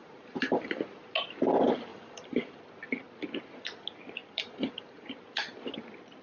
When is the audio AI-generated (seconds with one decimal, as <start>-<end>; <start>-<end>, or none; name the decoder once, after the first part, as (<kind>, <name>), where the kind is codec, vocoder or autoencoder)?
0.0-0.8 (vocoder, BigVGAN v2); 1.9-2.6; 4.2-5.2